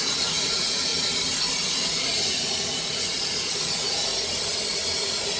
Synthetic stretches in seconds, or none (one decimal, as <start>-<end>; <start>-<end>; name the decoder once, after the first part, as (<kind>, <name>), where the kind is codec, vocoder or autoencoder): 0.0-0.9 (vocoder, Vocos); 1.8-4.1; 5.0-5.4